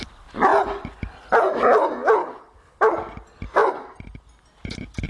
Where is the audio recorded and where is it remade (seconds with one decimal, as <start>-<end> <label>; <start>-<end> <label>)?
0.0-2.2 recorded; 2.2-2.8 remade; 2.8-5.1 recorded